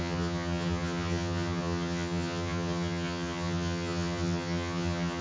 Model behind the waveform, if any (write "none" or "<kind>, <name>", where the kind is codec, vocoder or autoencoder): vocoder, HiFi-GAN